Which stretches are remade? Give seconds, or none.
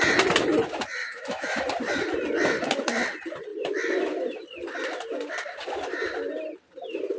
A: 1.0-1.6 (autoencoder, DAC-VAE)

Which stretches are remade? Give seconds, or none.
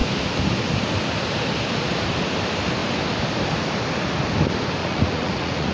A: 4.8-5.7 (vocoder, Vocos)